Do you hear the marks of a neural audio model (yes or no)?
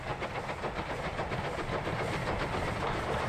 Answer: no